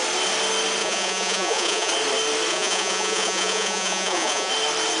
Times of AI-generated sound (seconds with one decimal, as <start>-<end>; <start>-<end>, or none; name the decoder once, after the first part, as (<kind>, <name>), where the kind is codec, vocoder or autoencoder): 0.8-1.9 (vocoder, Vocos); 2.5-4.5